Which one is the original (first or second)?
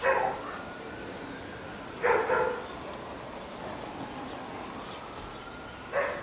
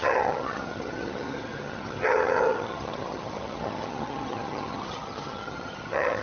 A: first